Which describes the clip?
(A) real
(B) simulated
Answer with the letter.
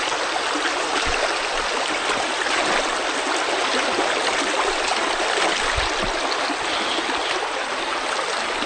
A